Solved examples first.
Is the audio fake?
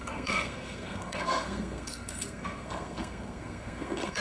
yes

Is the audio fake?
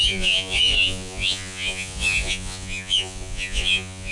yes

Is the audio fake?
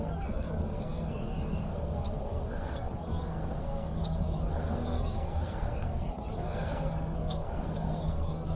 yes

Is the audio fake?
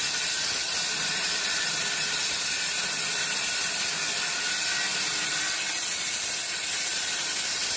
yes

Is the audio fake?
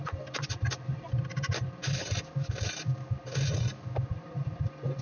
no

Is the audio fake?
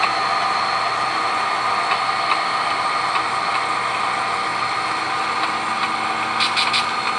no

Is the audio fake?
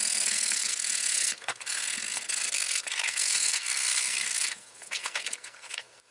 yes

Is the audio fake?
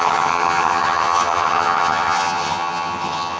yes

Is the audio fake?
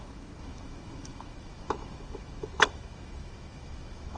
yes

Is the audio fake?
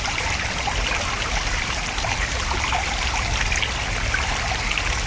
no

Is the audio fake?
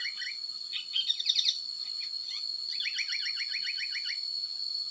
no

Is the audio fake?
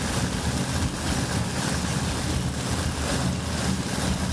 no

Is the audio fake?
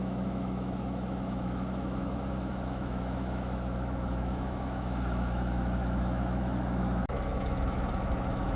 yes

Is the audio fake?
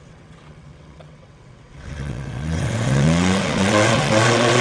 yes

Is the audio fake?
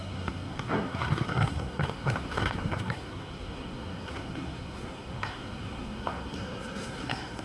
yes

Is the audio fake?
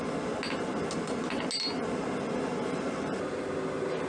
no